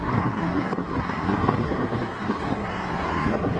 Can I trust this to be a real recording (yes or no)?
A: no